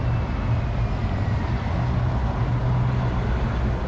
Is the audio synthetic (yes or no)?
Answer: no